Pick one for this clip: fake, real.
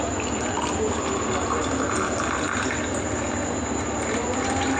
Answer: real